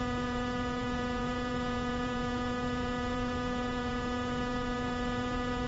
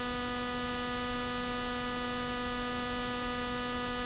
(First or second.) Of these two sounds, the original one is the second